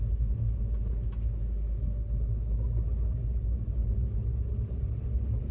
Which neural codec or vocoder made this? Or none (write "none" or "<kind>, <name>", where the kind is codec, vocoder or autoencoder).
none